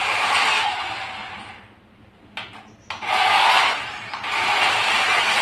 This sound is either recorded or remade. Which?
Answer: remade